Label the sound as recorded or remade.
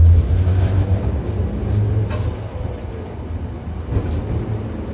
recorded